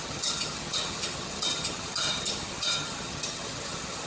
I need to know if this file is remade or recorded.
remade